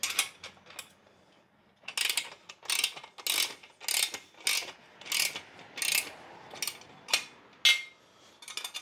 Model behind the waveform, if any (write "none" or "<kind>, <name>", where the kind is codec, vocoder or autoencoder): none